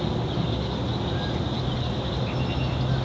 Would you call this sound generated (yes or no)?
no